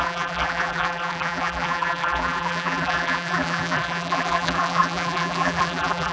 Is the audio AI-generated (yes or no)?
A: yes